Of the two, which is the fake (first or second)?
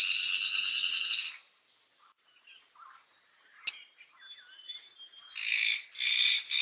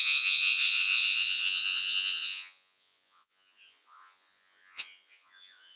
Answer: second